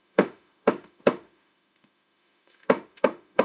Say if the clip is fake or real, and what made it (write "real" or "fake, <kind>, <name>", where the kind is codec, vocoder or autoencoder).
fake, autoencoder, DAC-VAE